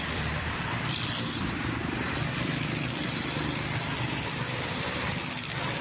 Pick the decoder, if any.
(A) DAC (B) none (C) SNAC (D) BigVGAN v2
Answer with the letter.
D